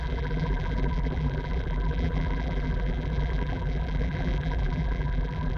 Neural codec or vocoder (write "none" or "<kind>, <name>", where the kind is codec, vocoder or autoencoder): vocoder, BigVGAN v2